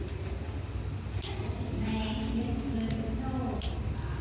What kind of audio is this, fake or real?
real